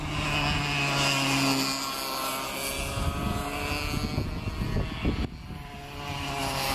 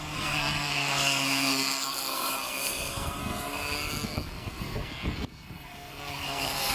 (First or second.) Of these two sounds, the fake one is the second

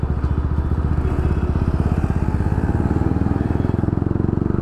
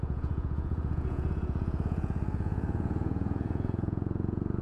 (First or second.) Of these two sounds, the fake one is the second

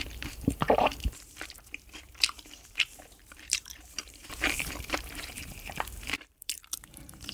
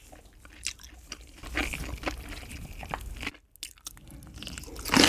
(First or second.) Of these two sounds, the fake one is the first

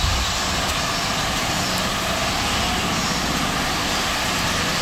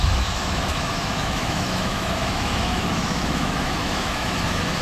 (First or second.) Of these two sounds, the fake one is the second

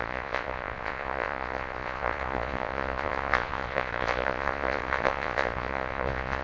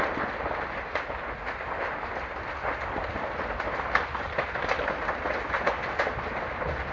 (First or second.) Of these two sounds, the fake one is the first